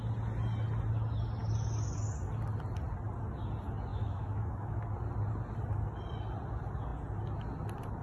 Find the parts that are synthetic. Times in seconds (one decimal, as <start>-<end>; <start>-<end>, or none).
3.9-4.8